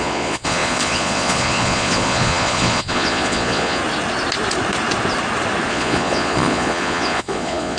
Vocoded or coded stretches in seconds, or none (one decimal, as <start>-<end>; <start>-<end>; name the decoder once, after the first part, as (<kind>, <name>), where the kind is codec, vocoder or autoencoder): 0.0-3.8 (vocoder, Vocos); 5.7-7.8